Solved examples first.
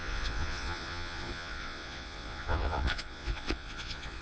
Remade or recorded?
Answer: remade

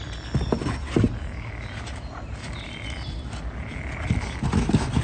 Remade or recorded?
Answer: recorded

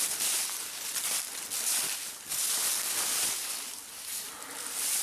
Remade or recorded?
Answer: recorded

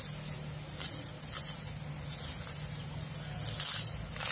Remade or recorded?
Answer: recorded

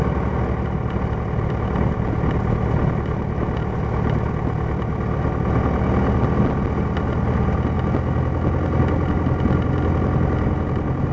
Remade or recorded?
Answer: recorded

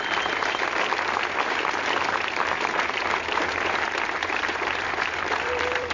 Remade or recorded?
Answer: remade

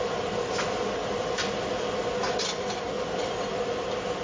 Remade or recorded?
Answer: recorded